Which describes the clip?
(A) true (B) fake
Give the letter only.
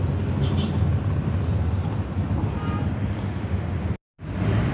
A